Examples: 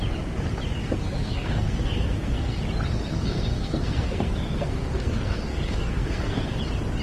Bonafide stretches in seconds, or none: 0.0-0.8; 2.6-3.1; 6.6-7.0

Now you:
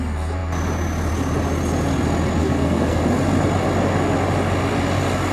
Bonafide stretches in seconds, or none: 0.0-2.4; 3.0-5.3

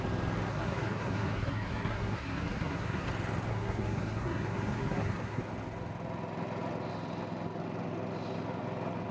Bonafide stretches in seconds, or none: 0.0-0.5; 3.1-3.5; 5.4-9.1

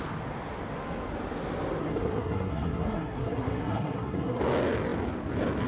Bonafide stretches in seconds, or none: 0.0-1.8; 4.4-5.7

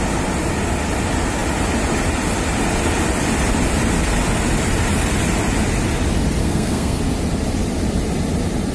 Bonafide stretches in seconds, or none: 0.0-6.4; 7.0-8.7

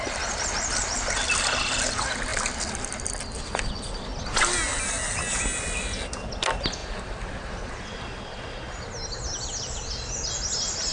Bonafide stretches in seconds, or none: 0.0-10.9

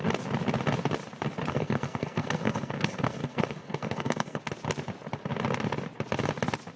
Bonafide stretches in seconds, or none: 0.0-1.5; 4.4-6.8

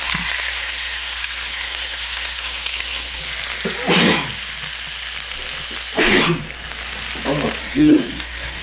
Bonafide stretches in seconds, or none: 3.2-7.6